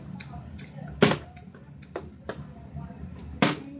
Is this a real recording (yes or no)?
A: yes